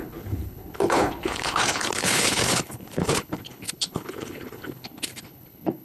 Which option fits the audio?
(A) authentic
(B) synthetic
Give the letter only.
B